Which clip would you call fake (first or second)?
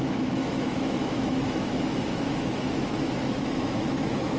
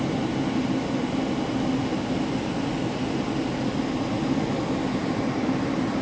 first